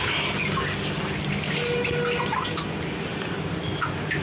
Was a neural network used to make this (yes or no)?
no